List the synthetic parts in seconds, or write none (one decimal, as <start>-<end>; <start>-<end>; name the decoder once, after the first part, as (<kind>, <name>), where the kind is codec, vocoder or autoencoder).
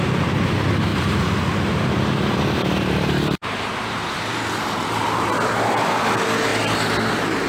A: 0.9-5.3 (vocoder, BigVGAN v2)